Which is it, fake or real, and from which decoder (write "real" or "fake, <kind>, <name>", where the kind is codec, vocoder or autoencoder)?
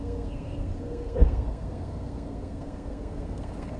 fake, codec, SNAC